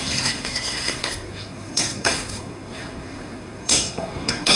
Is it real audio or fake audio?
fake